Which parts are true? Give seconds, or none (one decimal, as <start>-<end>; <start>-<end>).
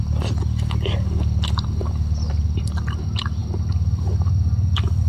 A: 0.0-5.1